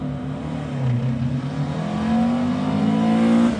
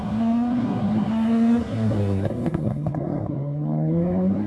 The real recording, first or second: first